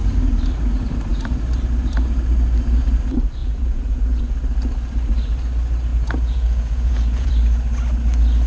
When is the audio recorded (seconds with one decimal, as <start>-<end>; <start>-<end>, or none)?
0.0-3.4; 4.2-5.9; 7.3-8.5